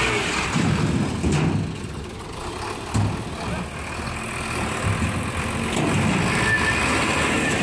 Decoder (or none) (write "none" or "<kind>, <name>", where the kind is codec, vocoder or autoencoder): none